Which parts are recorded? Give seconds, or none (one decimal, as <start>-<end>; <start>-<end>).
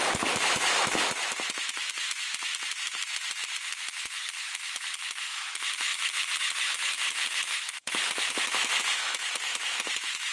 none